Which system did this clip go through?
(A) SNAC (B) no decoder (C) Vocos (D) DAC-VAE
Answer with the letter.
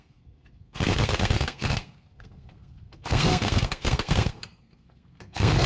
A